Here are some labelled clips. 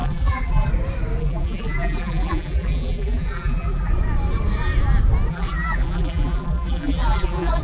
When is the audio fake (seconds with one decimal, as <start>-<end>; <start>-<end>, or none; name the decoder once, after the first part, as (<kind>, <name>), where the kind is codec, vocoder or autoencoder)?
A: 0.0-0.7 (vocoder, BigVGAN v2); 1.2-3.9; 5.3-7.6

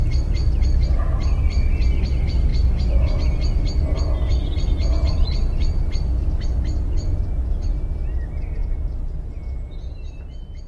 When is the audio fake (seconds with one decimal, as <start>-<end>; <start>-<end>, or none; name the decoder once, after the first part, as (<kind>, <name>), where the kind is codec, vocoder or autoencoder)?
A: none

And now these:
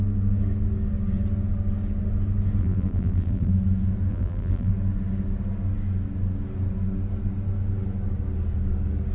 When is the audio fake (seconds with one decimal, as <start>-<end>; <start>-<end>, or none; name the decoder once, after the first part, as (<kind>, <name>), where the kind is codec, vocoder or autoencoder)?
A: 2.6-3.5 (vocoder, BigVGAN v2); 4.1-4.7